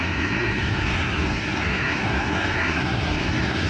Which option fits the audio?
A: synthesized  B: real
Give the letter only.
A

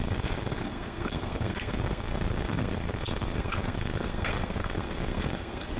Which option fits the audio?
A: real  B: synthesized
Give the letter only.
B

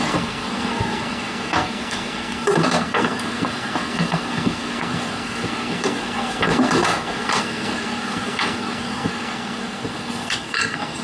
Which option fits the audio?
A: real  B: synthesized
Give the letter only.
B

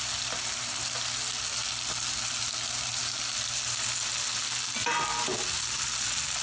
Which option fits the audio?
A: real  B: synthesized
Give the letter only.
A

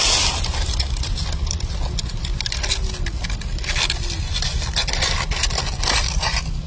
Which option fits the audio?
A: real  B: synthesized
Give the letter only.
A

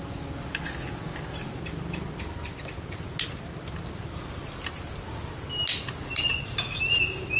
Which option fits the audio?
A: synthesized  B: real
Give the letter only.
B